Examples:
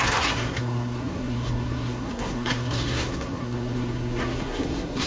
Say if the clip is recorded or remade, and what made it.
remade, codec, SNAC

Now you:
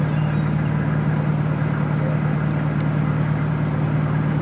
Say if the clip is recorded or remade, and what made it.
recorded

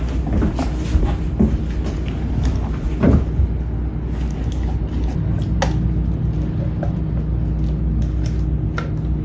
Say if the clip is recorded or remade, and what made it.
recorded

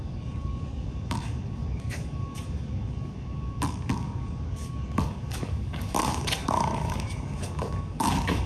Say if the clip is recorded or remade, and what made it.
remade, codec, DAC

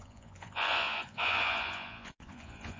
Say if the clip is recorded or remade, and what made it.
remade, vocoder, Vocos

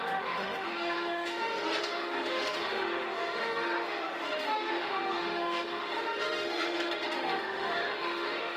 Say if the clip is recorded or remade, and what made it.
remade, autoencoder, DAC-VAE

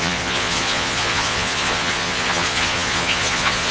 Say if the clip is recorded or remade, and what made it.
remade, vocoder, Vocos